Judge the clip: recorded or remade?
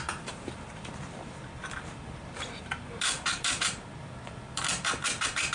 remade